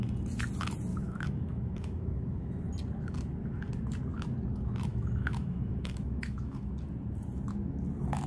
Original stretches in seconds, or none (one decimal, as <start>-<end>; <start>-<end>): 0.0-0.9; 2.5-4.9; 6.7-8.3